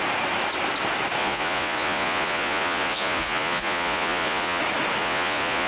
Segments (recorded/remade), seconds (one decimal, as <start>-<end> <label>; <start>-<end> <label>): 0.0-1.2 recorded; 1.2-4.6 remade; 4.6-5.0 recorded; 5.0-5.7 remade

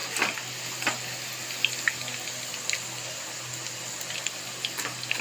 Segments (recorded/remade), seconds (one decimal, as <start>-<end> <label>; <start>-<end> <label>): 0.0-5.2 recorded

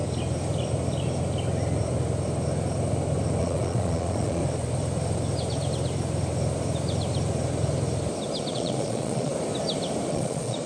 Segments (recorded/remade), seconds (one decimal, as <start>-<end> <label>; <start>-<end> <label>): 0.0-3.4 recorded; 3.4-4.4 remade; 4.4-8.5 recorded; 8.5-9.3 remade; 9.3-10.1 recorded; 10.1-10.7 remade

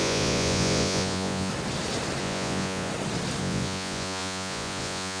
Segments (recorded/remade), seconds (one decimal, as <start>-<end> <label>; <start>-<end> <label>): 0.0-1.5 remade; 1.5-2.2 recorded; 2.2-2.9 remade; 2.9-3.4 recorded; 3.4-5.2 remade